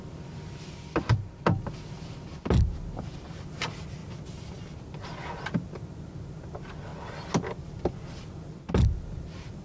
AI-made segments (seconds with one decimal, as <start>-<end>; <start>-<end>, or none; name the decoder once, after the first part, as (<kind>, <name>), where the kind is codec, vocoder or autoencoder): none

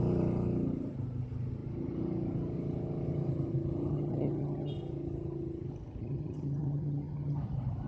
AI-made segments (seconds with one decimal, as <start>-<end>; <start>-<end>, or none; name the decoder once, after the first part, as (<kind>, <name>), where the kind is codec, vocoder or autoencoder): 3.9-4.7 (vocoder, HiFi-GAN); 6.0-7.4

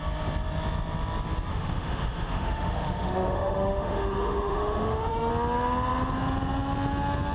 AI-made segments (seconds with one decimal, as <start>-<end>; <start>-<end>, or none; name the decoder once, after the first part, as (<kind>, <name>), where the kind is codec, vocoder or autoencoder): 1.5-5.3 (autoencoder, DAC-VAE)

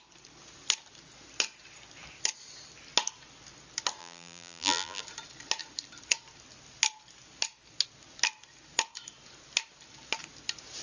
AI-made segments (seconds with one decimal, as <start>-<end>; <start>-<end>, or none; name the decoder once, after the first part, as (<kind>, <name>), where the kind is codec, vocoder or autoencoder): 4.0-5.0 (vocoder, BigVGAN v2)

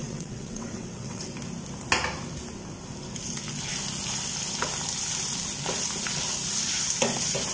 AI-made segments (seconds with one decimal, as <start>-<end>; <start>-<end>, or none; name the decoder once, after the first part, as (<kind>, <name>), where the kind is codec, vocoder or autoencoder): 0.0-1.2 (vocoder, WaveNeXt)

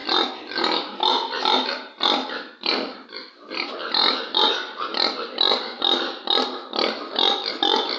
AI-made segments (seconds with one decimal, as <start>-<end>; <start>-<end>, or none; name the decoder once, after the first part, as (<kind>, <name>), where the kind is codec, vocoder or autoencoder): 4.9-7.5 (vocoder, BigVGAN v2)

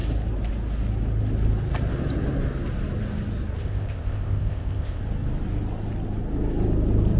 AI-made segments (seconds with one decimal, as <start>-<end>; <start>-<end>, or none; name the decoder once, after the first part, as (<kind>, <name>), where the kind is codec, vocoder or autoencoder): 3.6-5.0 (codec, ZipCodec)

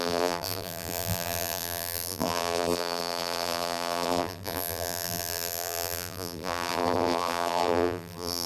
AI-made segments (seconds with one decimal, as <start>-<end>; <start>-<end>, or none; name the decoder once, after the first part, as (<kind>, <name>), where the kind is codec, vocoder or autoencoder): 0.0-8.5 (vocoder, BigVGAN v2)